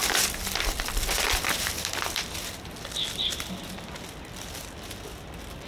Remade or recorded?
remade